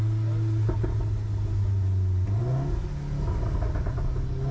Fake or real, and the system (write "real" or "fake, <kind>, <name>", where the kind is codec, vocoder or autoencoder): real